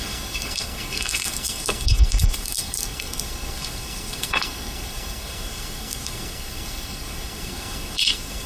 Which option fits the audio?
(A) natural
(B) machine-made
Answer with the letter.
B